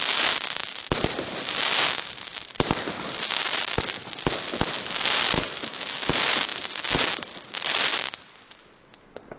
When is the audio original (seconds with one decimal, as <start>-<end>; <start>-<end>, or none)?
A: 0.0-9.4